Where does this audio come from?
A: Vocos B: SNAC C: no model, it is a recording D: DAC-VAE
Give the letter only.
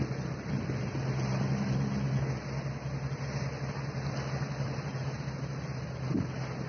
C